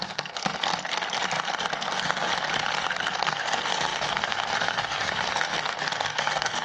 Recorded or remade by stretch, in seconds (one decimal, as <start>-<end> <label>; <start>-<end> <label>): 0.0-0.7 remade; 0.7-1.8 recorded; 1.8-2.3 remade; 2.3-2.9 recorded; 2.9-6.6 remade